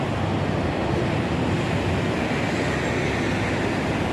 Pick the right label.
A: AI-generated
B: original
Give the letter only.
B